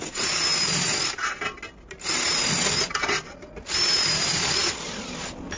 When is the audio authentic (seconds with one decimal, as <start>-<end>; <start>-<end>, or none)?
0.0-5.6